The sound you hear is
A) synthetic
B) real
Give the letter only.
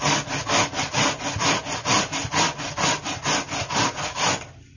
B